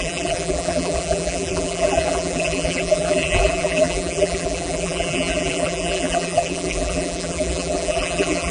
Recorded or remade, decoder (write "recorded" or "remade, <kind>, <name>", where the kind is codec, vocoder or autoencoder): remade, vocoder, BigVGAN v2